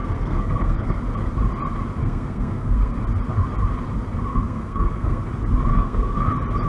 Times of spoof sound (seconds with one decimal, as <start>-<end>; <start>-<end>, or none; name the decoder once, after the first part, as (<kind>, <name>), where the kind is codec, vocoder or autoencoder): 0.0-1.0 (codec, SNAC); 2.0-3.0; 4.3-5.2; 5.7-6.3